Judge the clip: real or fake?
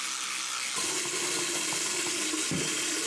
real